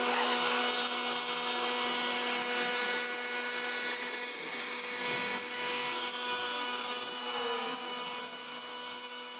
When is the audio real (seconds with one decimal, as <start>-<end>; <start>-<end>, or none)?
0.6-4.2